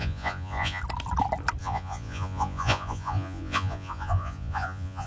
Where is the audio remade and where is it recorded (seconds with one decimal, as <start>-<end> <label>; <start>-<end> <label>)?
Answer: 0.0-0.8 remade; 0.8-1.6 recorded; 1.6-5.1 remade